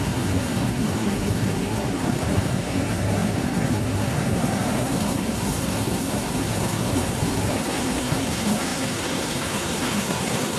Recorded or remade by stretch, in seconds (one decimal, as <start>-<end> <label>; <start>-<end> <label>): 0.0-10.6 remade